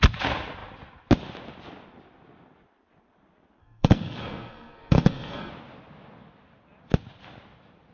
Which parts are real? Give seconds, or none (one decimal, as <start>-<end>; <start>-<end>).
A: 0.0-3.6; 5.5-7.9